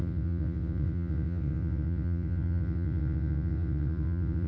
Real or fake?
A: fake